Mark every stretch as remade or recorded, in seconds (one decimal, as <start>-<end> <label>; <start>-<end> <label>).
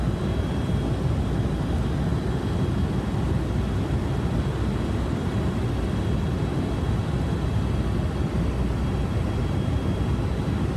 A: 0.0-10.8 recorded